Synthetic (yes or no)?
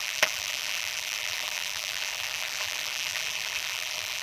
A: yes